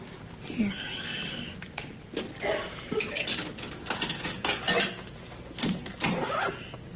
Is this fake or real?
real